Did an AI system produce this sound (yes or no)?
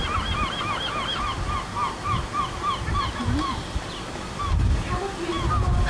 no